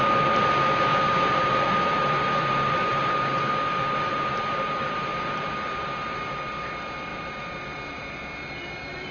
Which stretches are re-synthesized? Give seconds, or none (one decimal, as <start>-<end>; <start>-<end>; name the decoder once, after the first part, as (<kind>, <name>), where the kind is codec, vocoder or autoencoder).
0.9-3.5 (vocoder, BigVGAN v2); 4.1-5.9; 7.1-8.2